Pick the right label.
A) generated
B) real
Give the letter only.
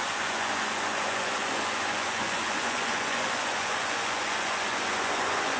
A